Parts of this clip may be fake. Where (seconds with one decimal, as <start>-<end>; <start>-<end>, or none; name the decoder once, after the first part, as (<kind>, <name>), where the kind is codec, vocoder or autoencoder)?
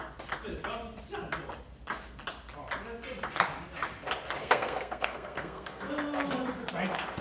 4.4-5.9 (codec, SNAC)